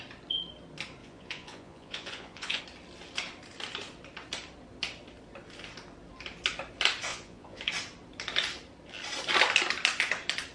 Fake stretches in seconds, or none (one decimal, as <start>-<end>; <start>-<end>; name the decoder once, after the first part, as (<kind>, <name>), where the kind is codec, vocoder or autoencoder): 1.0-2.6 (vocoder, Vocos); 7.1-7.7